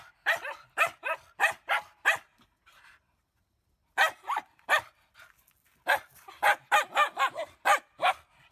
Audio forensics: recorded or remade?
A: recorded